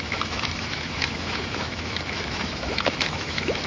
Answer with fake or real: fake